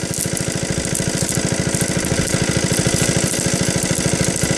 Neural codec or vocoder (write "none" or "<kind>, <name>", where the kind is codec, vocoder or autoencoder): none